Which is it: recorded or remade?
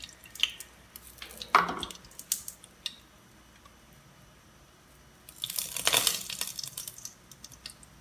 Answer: recorded